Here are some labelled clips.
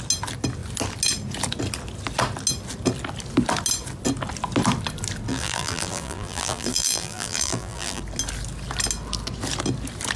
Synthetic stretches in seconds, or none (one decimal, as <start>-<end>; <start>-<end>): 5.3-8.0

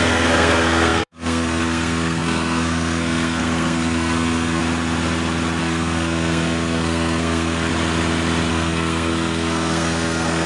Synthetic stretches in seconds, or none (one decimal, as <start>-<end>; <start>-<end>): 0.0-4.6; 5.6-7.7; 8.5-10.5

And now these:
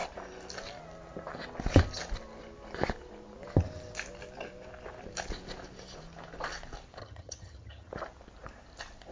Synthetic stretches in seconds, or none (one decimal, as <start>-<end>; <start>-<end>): 7.0-7.9

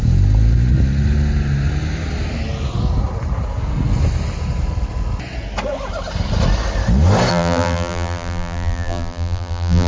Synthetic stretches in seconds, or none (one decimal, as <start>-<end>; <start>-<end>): 7.3-9.9